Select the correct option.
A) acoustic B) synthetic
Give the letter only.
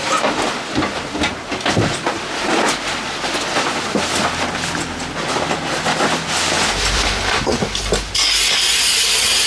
A